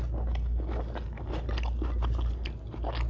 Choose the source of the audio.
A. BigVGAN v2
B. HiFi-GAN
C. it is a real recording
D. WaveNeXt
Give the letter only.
C